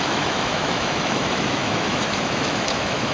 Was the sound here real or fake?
fake